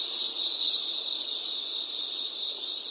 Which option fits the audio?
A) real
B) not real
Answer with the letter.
A